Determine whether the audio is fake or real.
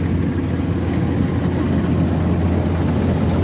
real